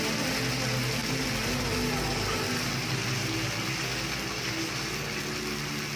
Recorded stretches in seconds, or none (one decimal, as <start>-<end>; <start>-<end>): 0.0-6.0